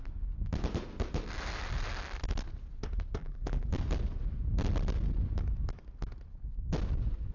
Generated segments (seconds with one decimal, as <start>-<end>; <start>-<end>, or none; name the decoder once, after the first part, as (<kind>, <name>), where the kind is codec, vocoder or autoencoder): 3.2-3.7 (vocoder, BigVGAN v2)